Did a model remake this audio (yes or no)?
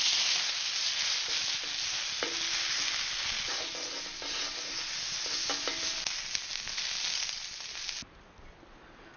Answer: no